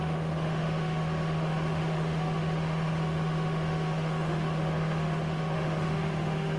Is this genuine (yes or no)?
no